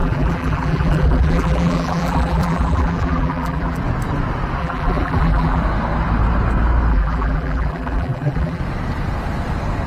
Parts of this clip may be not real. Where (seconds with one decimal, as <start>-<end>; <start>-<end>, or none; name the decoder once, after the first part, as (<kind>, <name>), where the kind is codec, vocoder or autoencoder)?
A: 0.0-3.8 (vocoder, BigVGAN v2); 4.6-5.6; 6.9-8.6